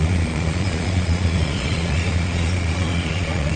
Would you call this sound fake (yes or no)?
yes